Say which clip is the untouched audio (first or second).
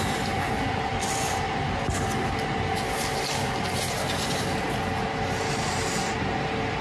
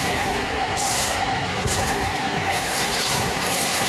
first